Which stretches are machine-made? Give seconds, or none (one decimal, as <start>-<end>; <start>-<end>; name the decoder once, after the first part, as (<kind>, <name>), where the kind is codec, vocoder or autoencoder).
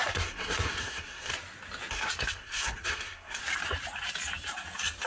0.0-1.3 (codec, SNAC); 1.9-3.4